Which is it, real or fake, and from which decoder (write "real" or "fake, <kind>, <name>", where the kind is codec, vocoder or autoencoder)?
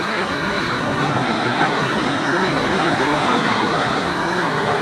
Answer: fake, codec, SNAC